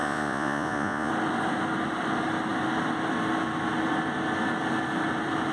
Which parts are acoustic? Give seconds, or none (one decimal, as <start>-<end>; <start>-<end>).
1.1-5.5

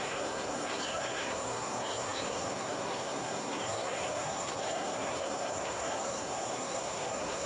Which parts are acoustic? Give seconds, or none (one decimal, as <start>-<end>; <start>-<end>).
none

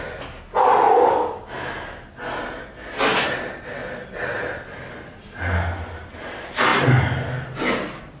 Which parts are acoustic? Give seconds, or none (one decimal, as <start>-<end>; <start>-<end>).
0.0-8.2

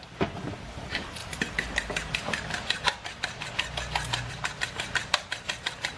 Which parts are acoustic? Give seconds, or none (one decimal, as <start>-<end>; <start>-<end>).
0.0-6.0

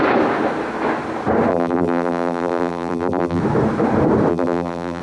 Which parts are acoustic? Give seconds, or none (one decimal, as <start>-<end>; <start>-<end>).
0.0-1.5; 3.4-4.3

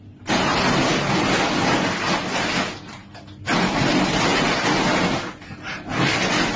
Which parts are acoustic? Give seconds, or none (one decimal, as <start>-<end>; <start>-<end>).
0.0-6.6